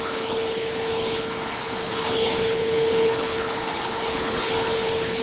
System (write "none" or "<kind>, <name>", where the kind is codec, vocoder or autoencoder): codec, HILCodec